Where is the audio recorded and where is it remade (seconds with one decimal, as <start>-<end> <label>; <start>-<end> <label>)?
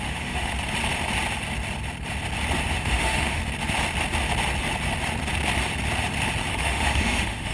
0.0-0.5 remade; 0.5-2.7 recorded; 2.7-3.4 remade; 3.4-6.5 recorded; 6.5-7.5 remade